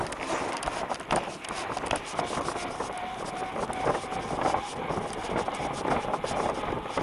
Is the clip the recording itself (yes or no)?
yes